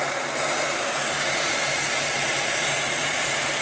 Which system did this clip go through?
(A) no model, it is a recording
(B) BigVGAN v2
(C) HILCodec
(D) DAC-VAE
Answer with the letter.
A